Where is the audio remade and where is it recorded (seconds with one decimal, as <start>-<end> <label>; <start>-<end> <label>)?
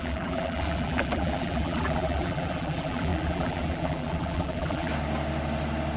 0.0-4.9 remade; 4.9-6.0 recorded